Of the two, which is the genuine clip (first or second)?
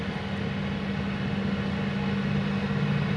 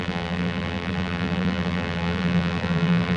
first